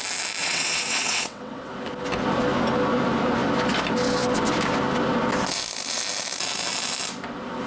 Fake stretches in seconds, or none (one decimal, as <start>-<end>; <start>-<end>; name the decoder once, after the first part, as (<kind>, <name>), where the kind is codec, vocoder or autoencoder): 0.4-1.7 (vocoder, WaveNeXt)